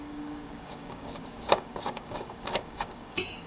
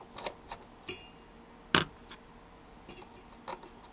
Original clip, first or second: second